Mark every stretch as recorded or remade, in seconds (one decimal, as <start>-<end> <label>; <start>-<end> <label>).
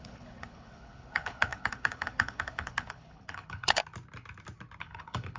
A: 0.0-3.8 remade; 3.8-4.8 recorded; 4.8-5.4 remade